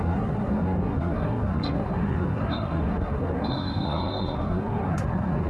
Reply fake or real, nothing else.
fake